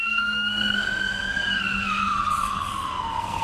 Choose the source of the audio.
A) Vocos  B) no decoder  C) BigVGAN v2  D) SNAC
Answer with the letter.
D